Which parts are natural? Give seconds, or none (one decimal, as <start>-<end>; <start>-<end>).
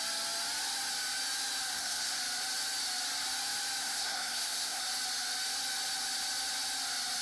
0.0-1.7; 2.2-3.8; 4.8-7.2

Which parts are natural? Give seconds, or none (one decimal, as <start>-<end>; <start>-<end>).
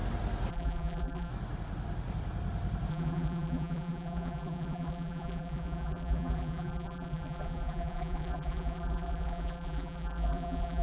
0.0-0.5; 1.3-2.9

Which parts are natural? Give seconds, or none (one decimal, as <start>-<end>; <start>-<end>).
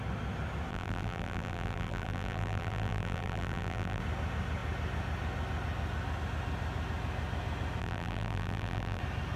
0.0-0.7; 4.0-7.8; 9.0-9.4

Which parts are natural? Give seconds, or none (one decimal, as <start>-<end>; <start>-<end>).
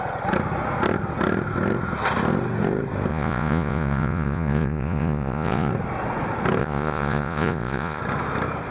0.0-3.1; 5.7-6.6; 8.0-8.7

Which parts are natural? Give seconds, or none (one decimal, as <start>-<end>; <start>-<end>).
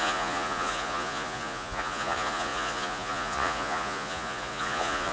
none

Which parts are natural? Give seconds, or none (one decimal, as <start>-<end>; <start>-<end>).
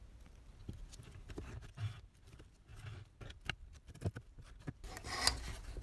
0.0-5.8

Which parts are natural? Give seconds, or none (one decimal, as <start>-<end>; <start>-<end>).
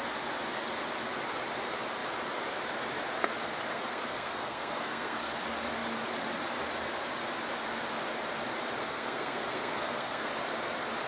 0.0-3.7; 5.3-8.8; 10.3-11.1